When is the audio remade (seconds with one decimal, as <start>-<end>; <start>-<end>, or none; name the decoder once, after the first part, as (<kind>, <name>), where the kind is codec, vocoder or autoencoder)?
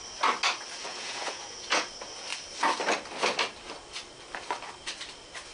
0.9-1.9 (vocoder, Vocos)